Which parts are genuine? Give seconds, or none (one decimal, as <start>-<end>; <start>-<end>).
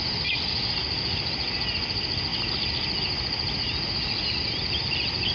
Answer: 0.0-5.3